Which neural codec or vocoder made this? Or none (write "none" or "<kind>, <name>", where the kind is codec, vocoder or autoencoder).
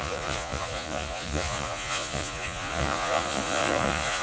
vocoder, Vocos